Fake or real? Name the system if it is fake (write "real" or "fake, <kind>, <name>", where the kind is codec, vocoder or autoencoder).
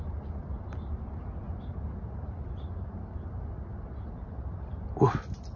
real